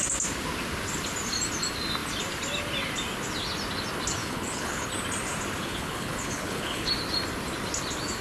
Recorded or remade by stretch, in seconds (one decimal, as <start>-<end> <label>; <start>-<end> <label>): 0.0-4.2 recorded; 4.2-4.9 remade; 4.9-5.6 recorded; 5.6-6.9 remade; 6.9-8.2 recorded